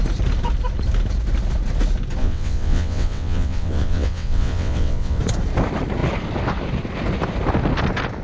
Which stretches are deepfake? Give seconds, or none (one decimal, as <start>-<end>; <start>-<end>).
2.2-5.2